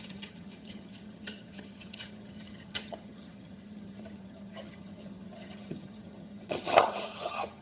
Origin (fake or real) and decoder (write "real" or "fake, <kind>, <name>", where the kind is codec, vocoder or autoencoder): fake, vocoder, HiFi-GAN